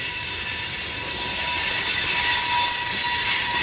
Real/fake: real